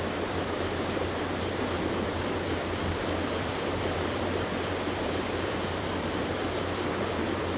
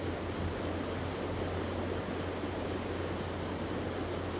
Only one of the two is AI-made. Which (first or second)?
first